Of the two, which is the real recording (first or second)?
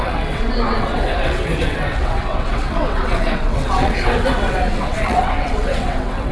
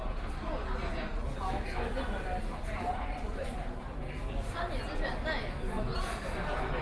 second